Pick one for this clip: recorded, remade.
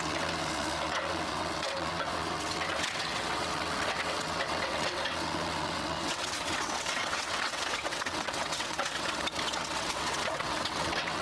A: remade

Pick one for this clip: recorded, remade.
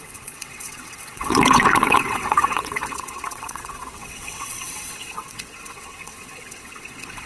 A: remade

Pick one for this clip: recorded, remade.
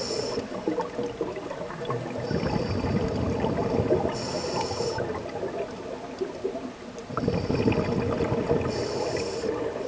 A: recorded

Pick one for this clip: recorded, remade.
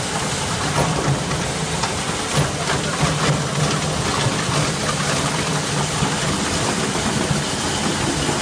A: recorded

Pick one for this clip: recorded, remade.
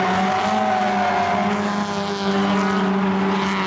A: recorded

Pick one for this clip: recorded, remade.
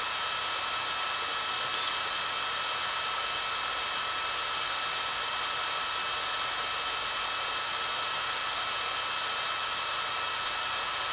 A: recorded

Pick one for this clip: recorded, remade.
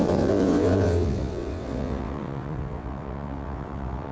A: remade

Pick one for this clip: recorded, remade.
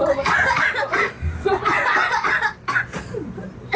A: recorded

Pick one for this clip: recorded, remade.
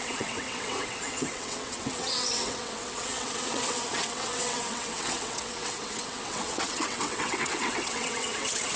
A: remade